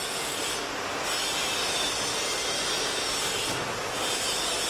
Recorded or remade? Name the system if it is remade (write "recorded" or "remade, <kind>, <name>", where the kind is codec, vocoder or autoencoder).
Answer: recorded